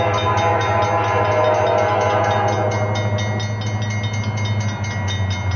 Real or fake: real